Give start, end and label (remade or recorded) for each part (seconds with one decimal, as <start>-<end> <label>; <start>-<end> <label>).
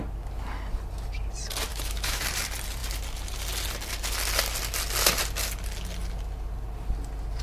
0.0-1.7 recorded; 1.7-2.2 remade; 2.2-7.4 recorded